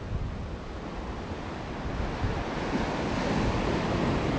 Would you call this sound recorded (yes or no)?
yes